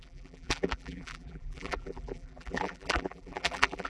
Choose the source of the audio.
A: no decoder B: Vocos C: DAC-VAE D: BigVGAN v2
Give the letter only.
D